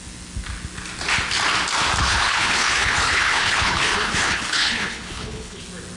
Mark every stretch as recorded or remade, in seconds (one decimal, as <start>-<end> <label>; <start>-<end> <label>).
0.0-2.0 recorded; 2.0-5.6 remade; 5.6-6.0 recorded